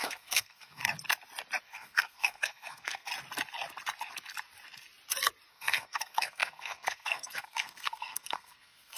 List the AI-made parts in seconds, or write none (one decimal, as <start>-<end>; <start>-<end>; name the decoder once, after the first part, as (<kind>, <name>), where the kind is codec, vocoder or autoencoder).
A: 0.0-0.8 (codec, SNAC); 1.6-3.1; 5.5-9.0